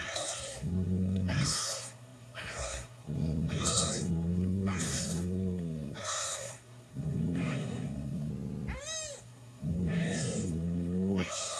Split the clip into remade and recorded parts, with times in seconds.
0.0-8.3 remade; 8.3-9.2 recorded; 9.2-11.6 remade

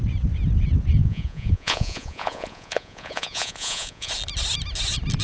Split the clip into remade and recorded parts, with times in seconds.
0.0-1.0 recorded; 1.0-4.1 remade; 4.1-5.2 recorded

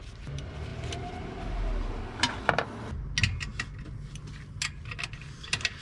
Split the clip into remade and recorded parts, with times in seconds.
0.0-5.8 recorded

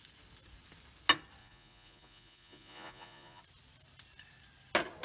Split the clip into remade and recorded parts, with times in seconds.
0.0-1.4 recorded; 1.4-3.4 remade; 3.4-5.0 recorded

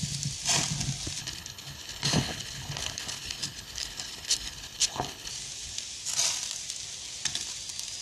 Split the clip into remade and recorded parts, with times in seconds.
0.0-1.2 recorded; 1.2-5.3 remade; 5.3-8.0 recorded

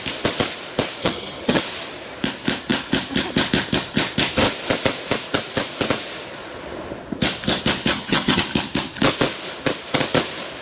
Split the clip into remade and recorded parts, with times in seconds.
0.0-1.0 recorded; 1.0-1.6 remade; 1.6-7.9 recorded; 7.9-8.4 remade; 8.4-10.6 recorded

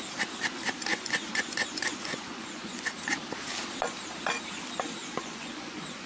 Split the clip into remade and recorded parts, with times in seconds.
0.0-0.9 recorded; 0.9-2.9 remade; 2.9-5.0 recorded; 5.0-6.1 remade